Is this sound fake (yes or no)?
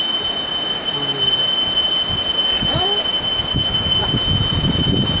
no